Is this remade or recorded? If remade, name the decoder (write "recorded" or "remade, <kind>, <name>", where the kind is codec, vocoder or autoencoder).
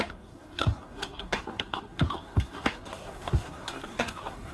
remade, codec, SNAC